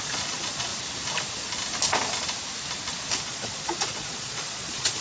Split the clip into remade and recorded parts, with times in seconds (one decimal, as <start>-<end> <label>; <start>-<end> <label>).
0.0-0.7 remade; 0.7-3.2 recorded; 3.2-5.0 remade